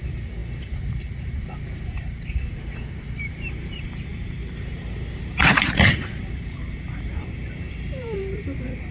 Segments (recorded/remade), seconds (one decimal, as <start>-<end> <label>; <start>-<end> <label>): 0.0-8.9 remade

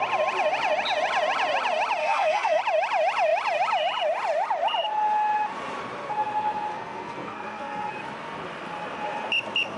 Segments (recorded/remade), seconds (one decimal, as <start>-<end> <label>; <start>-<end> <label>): 0.0-2.0 recorded; 2.0-2.6 remade; 2.6-6.7 recorded; 6.7-7.9 remade; 7.9-9.8 recorded

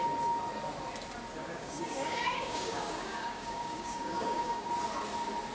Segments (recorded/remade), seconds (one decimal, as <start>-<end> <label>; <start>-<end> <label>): 0.0-1.4 recorded; 1.4-4.7 remade; 4.7-5.5 recorded

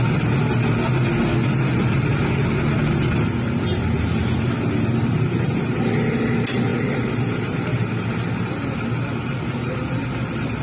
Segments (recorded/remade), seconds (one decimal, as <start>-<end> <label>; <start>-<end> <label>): 0.0-10.6 recorded

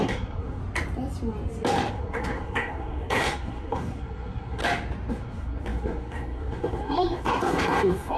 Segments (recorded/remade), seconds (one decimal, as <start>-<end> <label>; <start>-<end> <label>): 0.0-0.6 remade; 0.6-1.9 recorded; 1.9-4.6 remade; 4.6-5.1 recorded; 5.1-8.2 remade

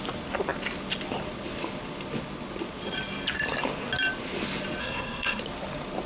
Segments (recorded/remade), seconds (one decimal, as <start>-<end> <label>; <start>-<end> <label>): 0.0-4.8 recorded; 4.8-5.4 remade; 5.4-6.1 recorded

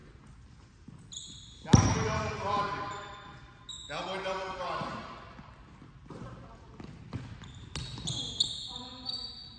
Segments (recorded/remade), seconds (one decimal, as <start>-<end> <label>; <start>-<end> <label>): 0.0-9.6 recorded